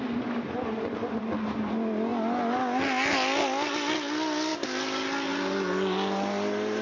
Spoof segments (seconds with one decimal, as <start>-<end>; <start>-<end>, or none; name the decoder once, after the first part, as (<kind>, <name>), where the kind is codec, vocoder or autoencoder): none